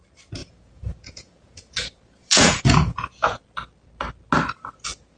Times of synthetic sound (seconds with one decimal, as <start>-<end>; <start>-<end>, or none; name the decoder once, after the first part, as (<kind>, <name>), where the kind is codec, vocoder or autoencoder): 0.4-3.4 (vocoder, Vocos)

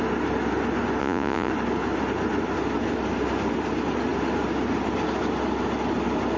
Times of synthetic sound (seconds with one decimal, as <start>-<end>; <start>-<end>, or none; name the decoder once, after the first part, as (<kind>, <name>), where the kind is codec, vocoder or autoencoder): 1.0-1.5 (vocoder, Vocos)

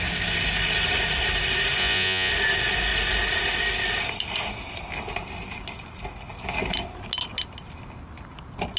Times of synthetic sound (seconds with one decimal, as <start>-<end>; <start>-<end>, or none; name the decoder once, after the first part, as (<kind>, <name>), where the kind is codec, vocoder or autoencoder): 1.8-2.3 (vocoder, Vocos)

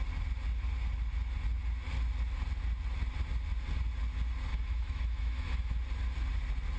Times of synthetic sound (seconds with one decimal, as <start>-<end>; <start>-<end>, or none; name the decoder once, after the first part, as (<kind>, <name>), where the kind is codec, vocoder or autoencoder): 4.5-5.7 (autoencoder, DAC-VAE)

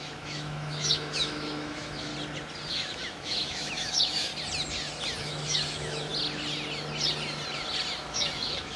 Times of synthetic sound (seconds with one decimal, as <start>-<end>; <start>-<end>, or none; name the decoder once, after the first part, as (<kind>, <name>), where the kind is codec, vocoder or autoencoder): 0.0-2.1 (autoencoder, DAC-VAE); 2.7-4.3; 5.2-6.1; 8.0-8.8

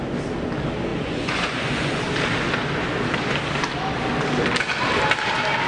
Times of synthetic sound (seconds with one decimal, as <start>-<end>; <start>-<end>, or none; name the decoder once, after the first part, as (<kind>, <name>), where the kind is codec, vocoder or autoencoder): 0.9-2.0 (vocoder, Vocos)

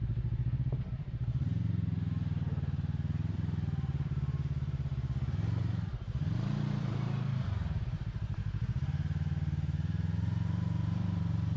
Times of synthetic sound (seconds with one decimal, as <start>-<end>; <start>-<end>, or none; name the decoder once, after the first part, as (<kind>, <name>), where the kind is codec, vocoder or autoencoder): 0.0-4.9 (vocoder, BigVGAN v2); 5.6-11.6